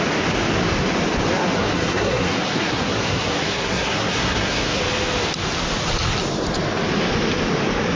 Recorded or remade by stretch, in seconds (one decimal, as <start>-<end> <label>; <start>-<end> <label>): 0.0-1.6 recorded; 1.6-4.8 remade; 4.8-8.0 recorded